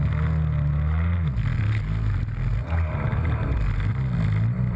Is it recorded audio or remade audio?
recorded